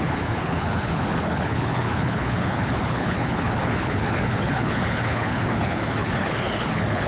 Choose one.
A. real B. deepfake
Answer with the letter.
B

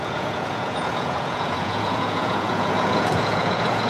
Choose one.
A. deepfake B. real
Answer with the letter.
A